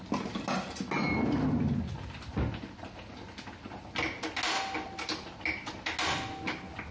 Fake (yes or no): no